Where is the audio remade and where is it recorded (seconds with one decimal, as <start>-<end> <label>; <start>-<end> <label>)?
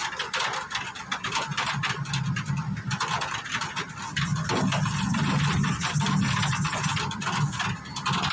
0.0-8.3 recorded